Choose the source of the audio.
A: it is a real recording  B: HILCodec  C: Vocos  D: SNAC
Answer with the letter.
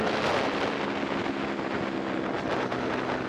A